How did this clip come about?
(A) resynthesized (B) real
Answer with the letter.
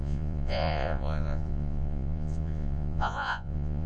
A